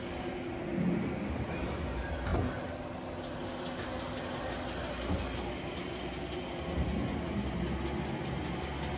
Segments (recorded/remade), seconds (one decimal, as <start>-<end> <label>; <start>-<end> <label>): 0.0-9.0 recorded

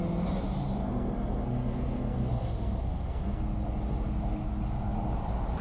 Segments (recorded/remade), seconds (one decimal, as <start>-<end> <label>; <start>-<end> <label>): 0.0-0.8 recorded; 0.8-3.4 remade; 3.4-5.6 recorded

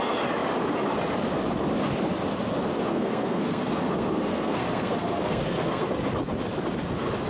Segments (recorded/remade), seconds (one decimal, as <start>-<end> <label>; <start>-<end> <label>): 0.0-2.7 recorded; 2.7-5.8 remade; 5.8-7.3 recorded

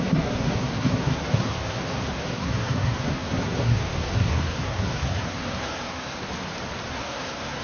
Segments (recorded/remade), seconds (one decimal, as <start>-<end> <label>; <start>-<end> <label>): 0.0-6.2 remade; 6.2-6.9 recorded; 6.9-7.6 remade

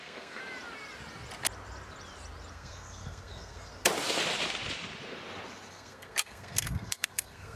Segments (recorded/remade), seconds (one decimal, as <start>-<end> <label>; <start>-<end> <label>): 0.0-0.4 remade; 0.4-2.5 recorded; 2.5-3.7 remade; 3.7-5.7 recorded; 5.7-7.6 remade

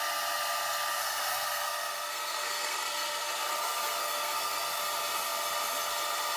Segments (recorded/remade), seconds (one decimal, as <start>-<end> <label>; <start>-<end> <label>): 0.0-1.0 recorded; 1.0-4.8 remade; 4.8-6.4 recorded